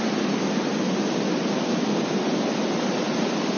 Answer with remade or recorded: recorded